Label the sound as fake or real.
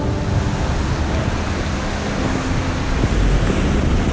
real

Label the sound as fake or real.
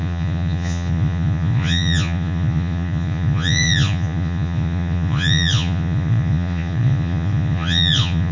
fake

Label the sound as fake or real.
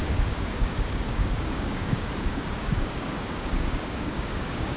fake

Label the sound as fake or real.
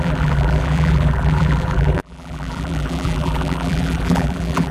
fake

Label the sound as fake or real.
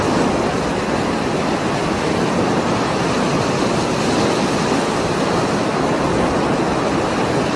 real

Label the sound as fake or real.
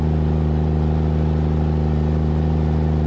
real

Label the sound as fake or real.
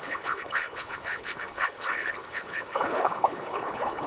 fake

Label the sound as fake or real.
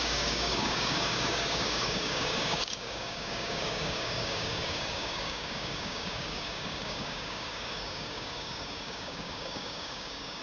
fake